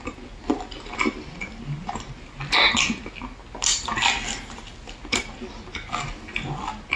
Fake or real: real